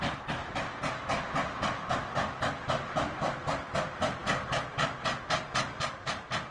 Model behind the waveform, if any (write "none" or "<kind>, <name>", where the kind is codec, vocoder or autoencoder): none